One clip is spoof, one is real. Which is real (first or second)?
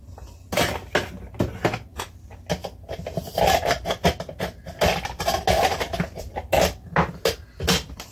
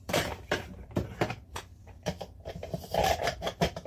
first